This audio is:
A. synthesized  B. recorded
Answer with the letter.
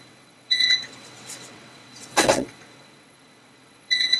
A